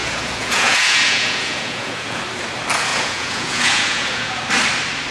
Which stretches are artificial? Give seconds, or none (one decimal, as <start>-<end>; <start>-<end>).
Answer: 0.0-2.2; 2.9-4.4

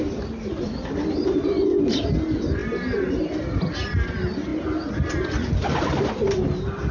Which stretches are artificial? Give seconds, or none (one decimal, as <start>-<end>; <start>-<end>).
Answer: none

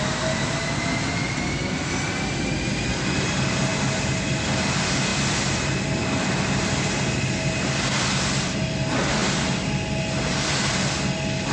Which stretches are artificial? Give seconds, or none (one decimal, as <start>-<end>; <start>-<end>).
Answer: none